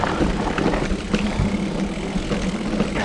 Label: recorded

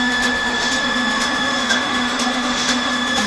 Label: remade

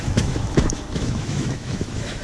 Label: remade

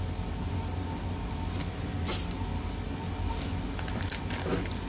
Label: recorded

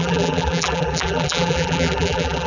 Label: remade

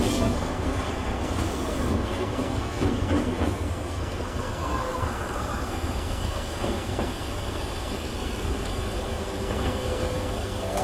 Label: remade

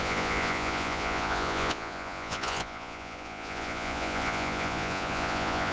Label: remade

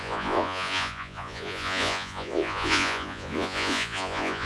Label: remade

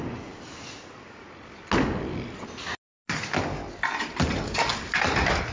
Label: recorded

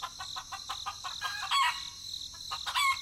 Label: recorded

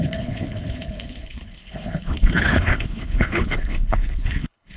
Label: remade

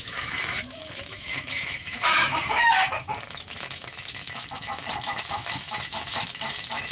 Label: remade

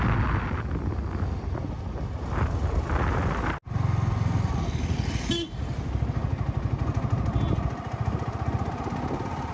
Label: recorded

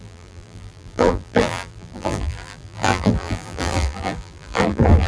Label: remade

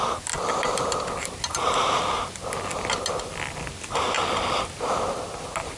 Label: recorded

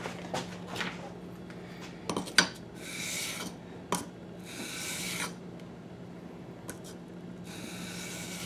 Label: recorded